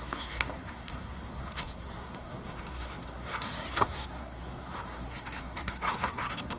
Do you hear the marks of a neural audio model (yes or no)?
yes